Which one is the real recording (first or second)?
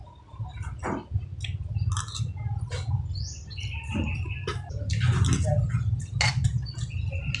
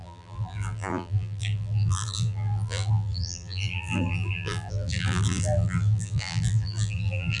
first